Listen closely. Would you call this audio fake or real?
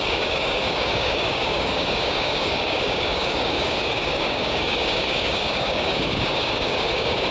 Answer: fake